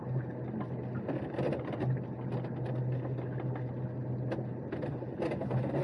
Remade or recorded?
recorded